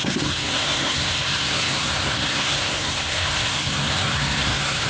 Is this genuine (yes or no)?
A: no